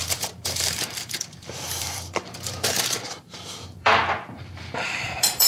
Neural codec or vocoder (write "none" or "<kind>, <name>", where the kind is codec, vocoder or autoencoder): vocoder, BigVGAN v2